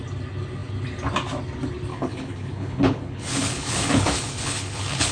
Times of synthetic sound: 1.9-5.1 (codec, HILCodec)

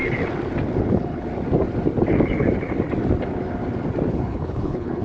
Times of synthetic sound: 0.8-1.3 (codec, HILCodec); 4.1-5.0

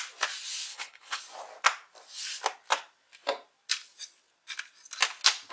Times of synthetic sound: 0.7-1.2 (codec, HILCodec)